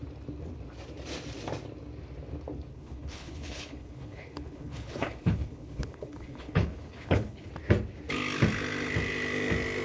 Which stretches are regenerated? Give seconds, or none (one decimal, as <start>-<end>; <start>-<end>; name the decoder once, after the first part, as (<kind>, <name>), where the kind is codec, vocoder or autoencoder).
2.7-7.5 (codec, HILCodec)